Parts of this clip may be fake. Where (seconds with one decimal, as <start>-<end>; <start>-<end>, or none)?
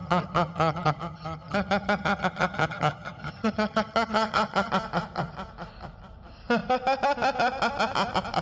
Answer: 0.0-4.7